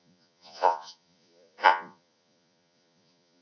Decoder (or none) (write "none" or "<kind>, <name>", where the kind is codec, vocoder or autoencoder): vocoder, Vocos